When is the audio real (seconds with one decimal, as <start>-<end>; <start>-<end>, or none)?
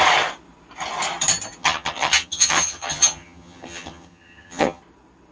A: 0.0-1.6; 4.8-5.3